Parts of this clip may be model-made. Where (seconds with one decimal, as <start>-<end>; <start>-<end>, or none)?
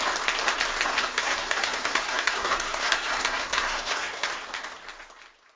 0.9-4.3